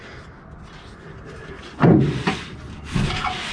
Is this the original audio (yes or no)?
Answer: yes